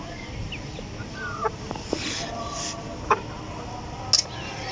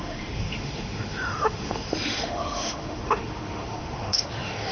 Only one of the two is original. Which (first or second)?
first